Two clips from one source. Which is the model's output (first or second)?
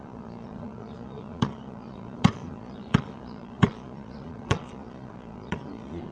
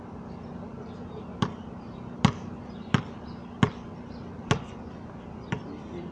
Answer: first